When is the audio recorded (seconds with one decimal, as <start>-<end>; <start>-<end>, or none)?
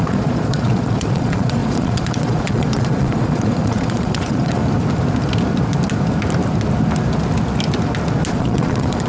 4.6-8.3